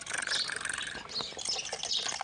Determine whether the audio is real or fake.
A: real